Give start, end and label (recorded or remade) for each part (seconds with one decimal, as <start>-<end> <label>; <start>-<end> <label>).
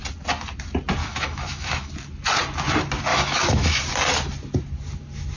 0.0-1.0 recorded; 1.0-1.9 remade; 1.9-3.1 recorded; 3.1-3.8 remade; 3.8-5.4 recorded